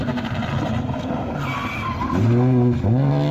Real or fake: real